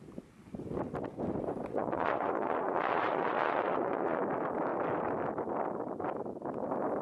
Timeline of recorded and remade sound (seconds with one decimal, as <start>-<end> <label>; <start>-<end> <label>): 0.0-1.7 recorded; 1.7-4.2 remade; 4.2-7.0 recorded